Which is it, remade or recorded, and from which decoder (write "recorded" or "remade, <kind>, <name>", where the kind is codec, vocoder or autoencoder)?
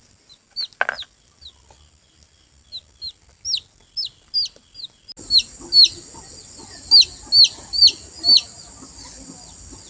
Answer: recorded